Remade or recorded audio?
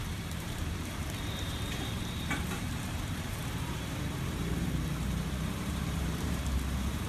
remade